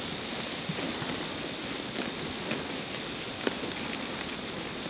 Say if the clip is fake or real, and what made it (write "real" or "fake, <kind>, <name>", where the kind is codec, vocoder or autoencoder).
real